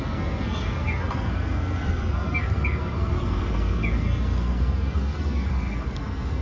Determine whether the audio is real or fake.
fake